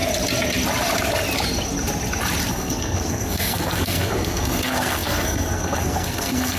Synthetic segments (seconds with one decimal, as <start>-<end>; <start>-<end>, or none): 2.5-6.6